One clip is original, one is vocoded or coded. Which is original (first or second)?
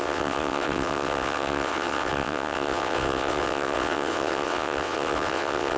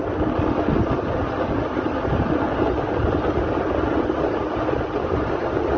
second